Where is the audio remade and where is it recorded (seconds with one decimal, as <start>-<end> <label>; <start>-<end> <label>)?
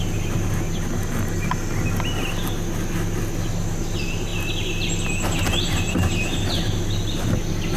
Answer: 0.0-7.8 recorded